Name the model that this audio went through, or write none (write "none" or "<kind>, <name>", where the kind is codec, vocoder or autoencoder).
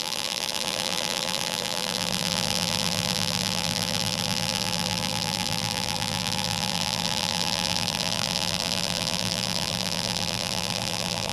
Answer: vocoder, BigVGAN v2